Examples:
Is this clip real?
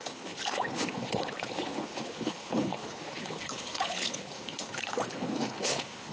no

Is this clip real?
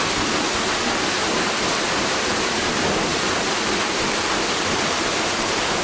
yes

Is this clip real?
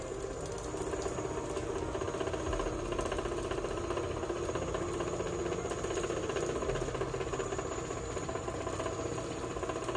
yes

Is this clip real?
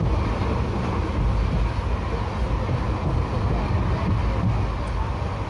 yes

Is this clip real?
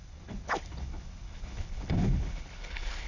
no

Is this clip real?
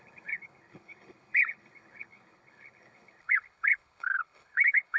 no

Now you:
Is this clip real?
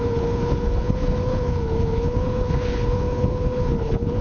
no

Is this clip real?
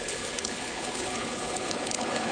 no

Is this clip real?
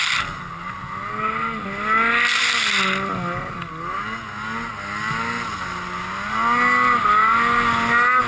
yes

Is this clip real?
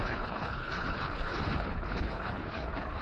no